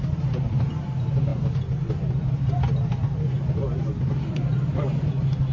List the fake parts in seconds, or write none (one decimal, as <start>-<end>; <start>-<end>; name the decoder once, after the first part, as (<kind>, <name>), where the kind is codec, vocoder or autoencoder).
none